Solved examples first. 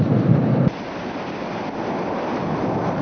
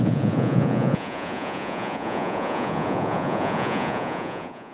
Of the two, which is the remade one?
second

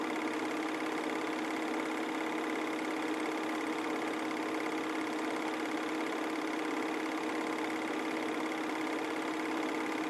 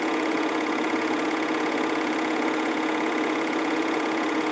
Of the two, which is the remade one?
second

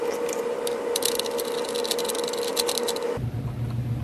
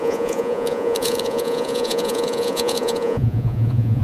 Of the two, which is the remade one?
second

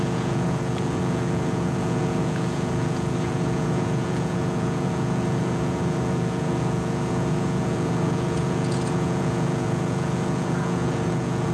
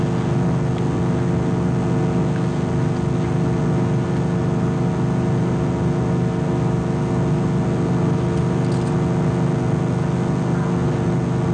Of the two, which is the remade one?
first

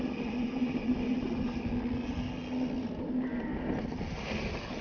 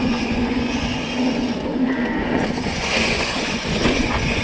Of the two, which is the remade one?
second